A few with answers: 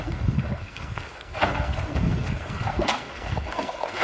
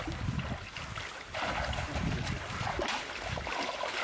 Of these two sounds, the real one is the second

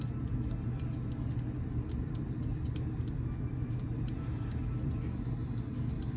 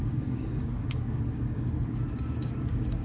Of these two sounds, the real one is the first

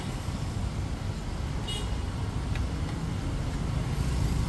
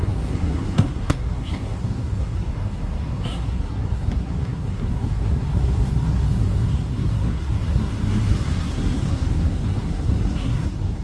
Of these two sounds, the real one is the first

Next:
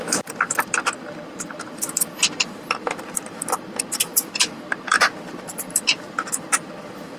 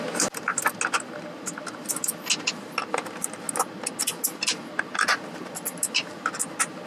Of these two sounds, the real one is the second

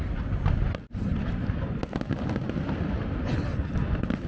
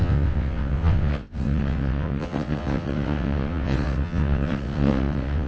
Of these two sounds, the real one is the first